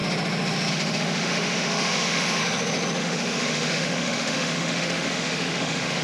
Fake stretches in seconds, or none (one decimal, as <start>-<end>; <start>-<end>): 0.7-2.4; 3.0-6.0